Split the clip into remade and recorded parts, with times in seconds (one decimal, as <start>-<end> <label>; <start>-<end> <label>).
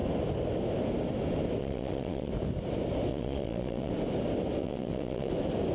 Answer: 0.0-1.6 recorded; 1.6-2.3 remade; 2.3-3.1 recorded; 3.1-3.9 remade; 3.9-4.6 recorded; 4.6-5.3 remade; 5.3-5.7 recorded